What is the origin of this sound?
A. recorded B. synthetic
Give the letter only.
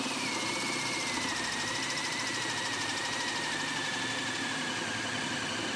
A